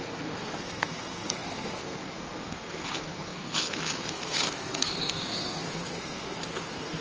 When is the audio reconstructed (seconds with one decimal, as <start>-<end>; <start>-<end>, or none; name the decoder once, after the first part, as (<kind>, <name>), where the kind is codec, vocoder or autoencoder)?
0.0-7.0 (codec, SNAC)